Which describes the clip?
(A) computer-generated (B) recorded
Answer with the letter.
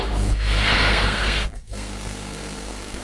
A